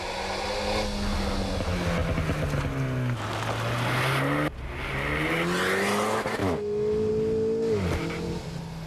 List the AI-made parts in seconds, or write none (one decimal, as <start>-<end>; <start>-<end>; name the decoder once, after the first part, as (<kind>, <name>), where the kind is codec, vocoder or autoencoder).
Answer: 6.4-7.1 (autoencoder, DAC-VAE)